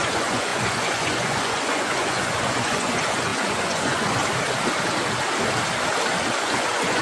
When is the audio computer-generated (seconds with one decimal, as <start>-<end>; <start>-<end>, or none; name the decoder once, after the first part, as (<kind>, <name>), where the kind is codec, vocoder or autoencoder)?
0.0-4.2 (vocoder, Vocos); 6.4-7.0